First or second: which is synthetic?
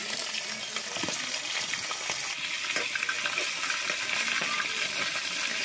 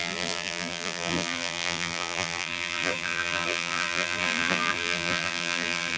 second